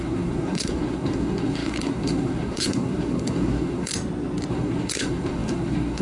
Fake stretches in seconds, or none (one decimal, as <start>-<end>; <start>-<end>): 0.0-3.9; 4.5-6.0